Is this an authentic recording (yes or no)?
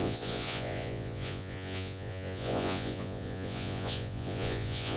no